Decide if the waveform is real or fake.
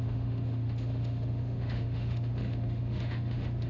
fake